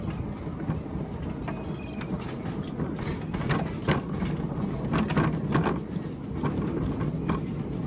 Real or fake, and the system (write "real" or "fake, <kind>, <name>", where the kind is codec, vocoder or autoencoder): real